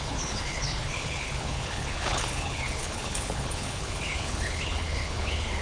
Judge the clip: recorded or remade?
remade